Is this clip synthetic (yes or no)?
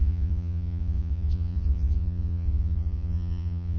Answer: yes